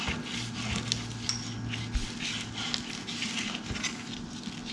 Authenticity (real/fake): real